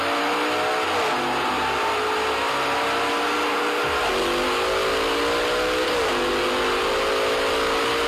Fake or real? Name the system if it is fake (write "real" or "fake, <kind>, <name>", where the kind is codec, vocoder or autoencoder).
real